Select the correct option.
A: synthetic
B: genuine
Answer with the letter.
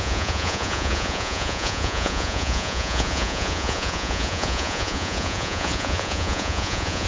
A